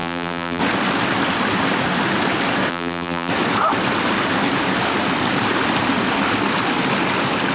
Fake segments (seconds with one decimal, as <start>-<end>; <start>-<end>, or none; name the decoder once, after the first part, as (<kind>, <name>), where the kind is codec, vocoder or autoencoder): 0.0-0.6 (vocoder, BigVGAN v2); 2.7-3.3